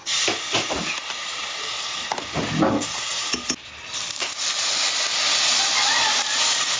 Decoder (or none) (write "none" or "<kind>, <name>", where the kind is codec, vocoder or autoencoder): none